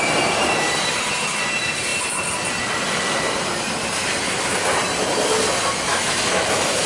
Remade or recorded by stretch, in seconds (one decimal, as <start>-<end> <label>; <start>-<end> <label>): 0.0-5.9 recorded; 5.9-6.5 remade; 6.5-6.9 recorded